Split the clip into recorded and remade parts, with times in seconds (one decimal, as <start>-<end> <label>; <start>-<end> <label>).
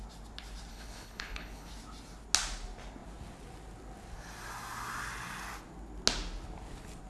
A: 0.0-0.7 recorded; 0.7-1.7 remade; 1.7-7.1 recorded